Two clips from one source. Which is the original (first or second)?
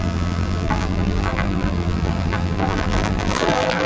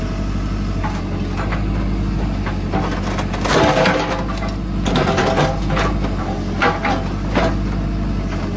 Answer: second